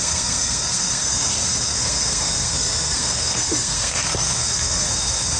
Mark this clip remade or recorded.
remade